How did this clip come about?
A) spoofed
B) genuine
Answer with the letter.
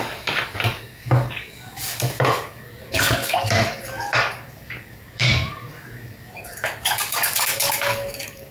A